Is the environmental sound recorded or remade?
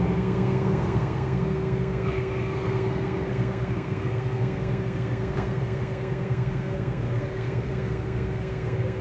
remade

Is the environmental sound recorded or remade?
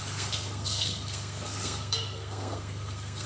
remade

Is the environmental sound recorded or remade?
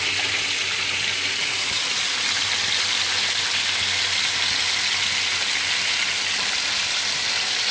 recorded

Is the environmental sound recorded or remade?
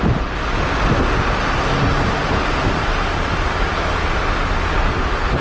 recorded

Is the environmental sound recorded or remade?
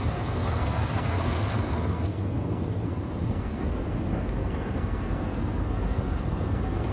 remade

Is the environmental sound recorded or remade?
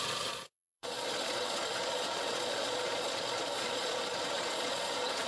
remade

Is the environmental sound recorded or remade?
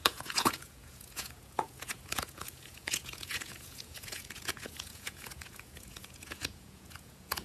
remade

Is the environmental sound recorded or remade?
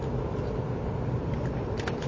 recorded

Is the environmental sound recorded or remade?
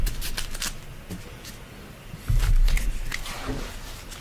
recorded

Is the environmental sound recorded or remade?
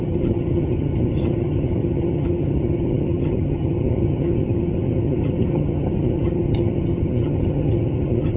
remade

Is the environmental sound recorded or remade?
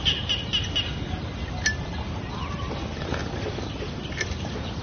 recorded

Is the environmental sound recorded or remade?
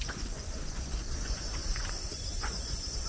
remade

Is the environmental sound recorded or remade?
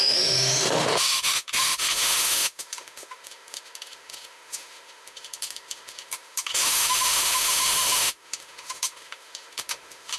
remade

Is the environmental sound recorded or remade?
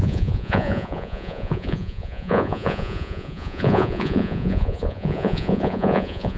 remade